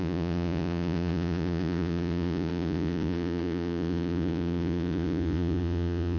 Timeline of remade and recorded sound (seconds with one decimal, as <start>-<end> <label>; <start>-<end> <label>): 0.0-6.2 remade